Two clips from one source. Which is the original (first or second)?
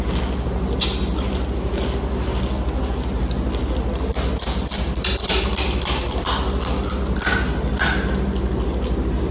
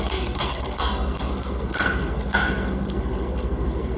first